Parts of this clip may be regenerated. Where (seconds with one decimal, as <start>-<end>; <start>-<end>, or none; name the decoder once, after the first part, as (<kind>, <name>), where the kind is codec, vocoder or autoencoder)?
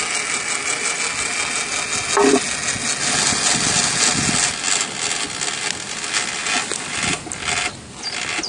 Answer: none